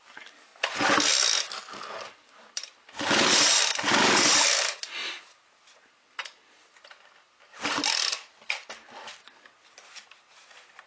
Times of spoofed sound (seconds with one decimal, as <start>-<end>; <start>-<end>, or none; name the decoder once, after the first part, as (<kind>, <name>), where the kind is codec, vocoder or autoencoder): none